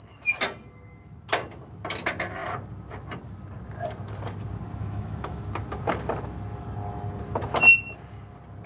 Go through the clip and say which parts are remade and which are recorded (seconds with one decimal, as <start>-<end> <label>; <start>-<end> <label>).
0.0-4.8 recorded; 4.8-5.4 remade; 5.4-8.7 recorded